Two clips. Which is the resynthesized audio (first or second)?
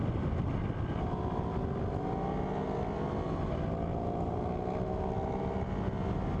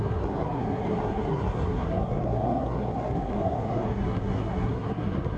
second